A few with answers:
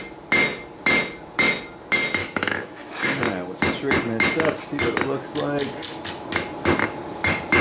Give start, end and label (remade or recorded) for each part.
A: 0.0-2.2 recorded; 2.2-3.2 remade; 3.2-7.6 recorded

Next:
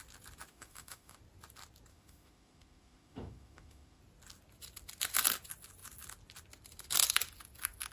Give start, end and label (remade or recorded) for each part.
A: 0.0-0.5 recorded; 0.5-1.2 remade; 1.2-1.9 recorded; 1.9-4.0 remade; 4.0-7.9 recorded

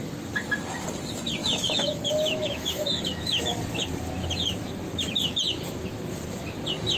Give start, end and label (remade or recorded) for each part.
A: 0.0-1.4 recorded; 1.4-3.6 remade; 3.6-7.0 recorded

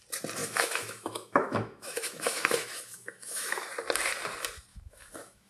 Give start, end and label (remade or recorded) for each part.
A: 0.0-0.4 recorded; 0.4-3.7 remade; 3.7-4.7 recorded; 4.7-5.5 remade

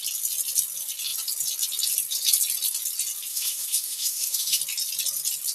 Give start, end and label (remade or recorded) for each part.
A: 0.0-3.3 recorded; 3.3-4.6 remade; 4.6-5.5 recorded